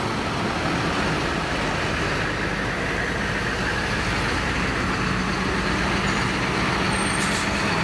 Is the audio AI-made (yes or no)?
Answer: no